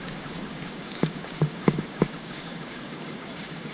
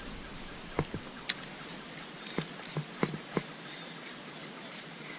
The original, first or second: second